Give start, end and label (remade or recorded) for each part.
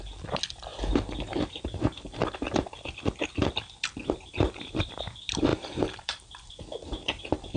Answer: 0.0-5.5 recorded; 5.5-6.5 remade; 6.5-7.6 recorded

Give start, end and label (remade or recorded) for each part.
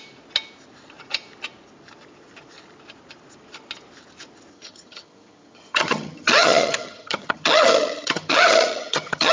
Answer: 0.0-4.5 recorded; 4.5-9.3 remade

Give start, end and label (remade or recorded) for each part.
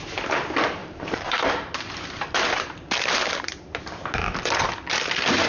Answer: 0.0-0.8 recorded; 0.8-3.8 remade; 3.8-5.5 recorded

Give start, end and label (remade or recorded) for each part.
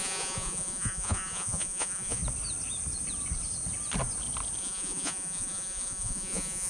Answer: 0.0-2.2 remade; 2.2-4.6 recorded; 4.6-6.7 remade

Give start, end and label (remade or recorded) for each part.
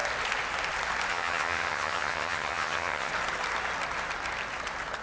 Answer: 0.0-1.1 recorded; 1.1-3.1 remade; 3.1-5.0 recorded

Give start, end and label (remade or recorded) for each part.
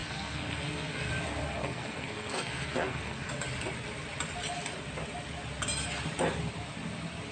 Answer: 0.0-1.1 remade; 1.1-1.6 recorded; 1.6-3.3 remade; 3.3-7.3 recorded